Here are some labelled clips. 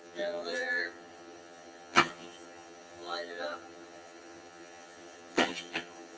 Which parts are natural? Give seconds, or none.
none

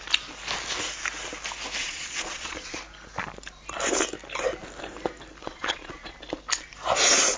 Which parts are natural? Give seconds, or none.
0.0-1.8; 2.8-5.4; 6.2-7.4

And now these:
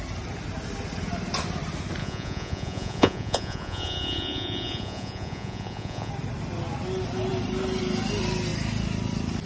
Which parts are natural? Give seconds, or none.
0.0-2.0; 6.1-9.5

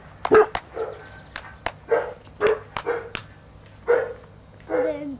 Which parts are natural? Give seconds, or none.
0.0-5.2

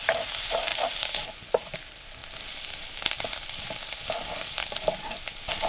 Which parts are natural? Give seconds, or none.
2.2-5.7